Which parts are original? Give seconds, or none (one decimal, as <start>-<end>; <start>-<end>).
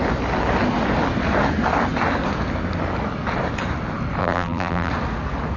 0.0-4.2; 4.9-5.6